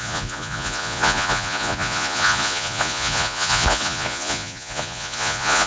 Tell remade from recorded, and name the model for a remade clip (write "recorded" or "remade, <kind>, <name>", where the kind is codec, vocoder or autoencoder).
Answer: remade, vocoder, Vocos